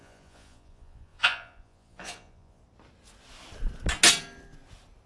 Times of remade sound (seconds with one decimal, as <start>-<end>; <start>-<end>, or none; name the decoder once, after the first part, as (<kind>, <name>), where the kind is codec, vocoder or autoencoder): 0.0-2.6 (vocoder, Vocos)